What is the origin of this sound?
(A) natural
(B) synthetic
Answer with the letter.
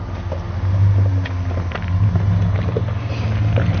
A